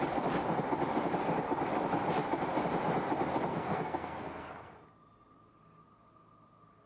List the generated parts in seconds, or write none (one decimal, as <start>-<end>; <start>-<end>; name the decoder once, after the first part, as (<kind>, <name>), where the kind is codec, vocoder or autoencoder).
3.5-4.7 (codec, SNAC)